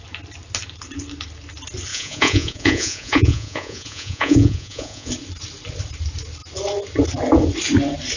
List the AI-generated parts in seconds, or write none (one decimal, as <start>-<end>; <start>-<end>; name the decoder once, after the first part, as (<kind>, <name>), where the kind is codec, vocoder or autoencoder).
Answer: 1.9-5.1 (vocoder, Vocos)